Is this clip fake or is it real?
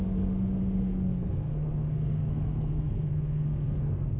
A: fake